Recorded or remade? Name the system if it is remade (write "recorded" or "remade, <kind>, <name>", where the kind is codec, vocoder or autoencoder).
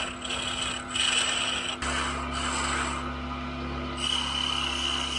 recorded